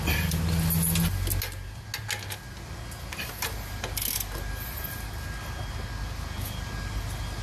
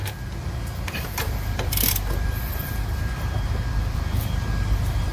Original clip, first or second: first